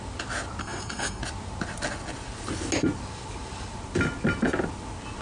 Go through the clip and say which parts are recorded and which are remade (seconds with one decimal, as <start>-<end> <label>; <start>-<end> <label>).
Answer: 0.0-0.6 recorded; 0.6-1.2 remade; 1.2-5.2 recorded